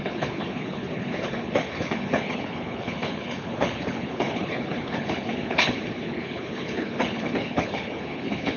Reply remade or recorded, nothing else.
remade